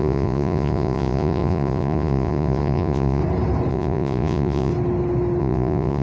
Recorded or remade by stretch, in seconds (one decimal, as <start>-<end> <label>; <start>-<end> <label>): 0.0-3.2 remade; 3.2-3.7 recorded; 3.7-4.7 remade; 4.7-5.4 recorded; 5.4-6.0 remade

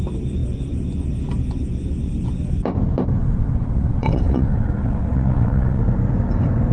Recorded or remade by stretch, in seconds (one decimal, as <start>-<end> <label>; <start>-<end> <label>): 0.0-3.2 recorded; 3.2-5.8 remade; 5.8-6.7 recorded

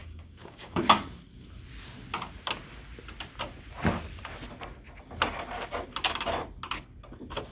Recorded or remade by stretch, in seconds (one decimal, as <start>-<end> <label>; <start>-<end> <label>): 0.0-0.8 remade; 0.8-7.5 recorded

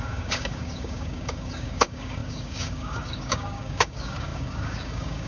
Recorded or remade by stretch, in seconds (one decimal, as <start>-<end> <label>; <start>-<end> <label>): 0.0-5.3 remade